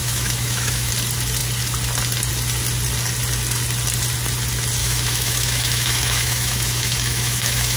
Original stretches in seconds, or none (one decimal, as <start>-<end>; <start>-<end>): 0.9-4.8